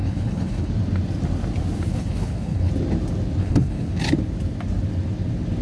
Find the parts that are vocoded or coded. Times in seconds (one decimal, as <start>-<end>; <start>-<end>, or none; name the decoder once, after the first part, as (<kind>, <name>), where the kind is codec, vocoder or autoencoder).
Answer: 0.0-0.7 (codec, HILCodec); 1.9-2.7; 3.4-4.0